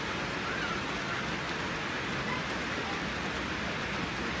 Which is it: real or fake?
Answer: real